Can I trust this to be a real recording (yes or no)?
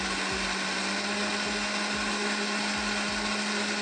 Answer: yes